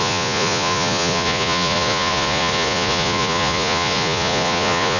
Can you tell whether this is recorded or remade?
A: remade